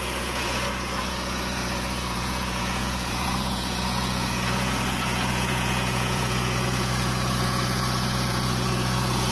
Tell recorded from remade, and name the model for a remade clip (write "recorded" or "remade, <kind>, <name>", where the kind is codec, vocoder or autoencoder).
remade, vocoder, Vocos